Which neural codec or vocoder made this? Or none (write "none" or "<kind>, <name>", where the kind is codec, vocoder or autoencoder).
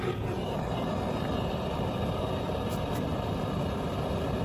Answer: none